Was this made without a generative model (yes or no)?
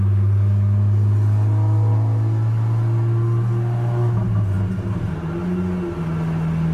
yes